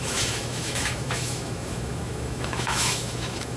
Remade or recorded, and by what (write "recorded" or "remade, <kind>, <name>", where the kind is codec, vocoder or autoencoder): remade, autoencoder, DAC-VAE